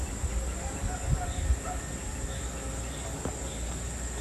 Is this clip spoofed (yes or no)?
no